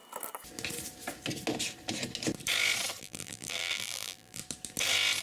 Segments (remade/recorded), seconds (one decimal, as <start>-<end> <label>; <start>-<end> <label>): 0.0-3.0 recorded; 3.0-4.4 remade; 4.4-5.2 recorded